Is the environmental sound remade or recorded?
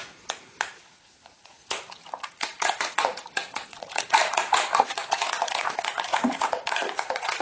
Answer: remade